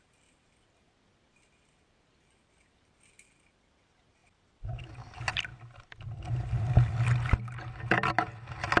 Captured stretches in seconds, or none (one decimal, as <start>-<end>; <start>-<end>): 0.0-4.2; 4.8-5.5; 6.6-8.8